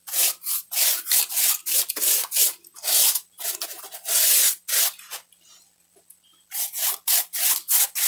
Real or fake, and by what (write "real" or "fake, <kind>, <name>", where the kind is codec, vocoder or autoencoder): real